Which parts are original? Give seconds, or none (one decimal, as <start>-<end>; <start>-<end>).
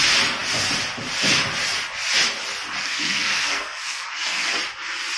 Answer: 0.0-2.8; 4.6-5.2